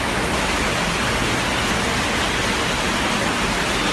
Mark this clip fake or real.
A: real